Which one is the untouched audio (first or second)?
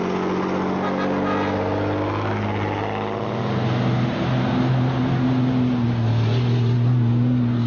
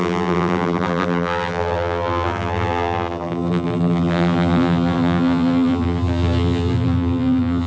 first